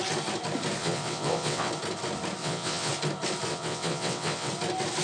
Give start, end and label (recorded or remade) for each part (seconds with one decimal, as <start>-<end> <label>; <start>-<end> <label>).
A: 0.0-0.8 recorded; 0.8-1.7 remade; 1.7-2.4 recorded; 2.4-2.9 remade; 2.9-3.5 recorded; 3.5-4.5 remade; 4.5-5.0 recorded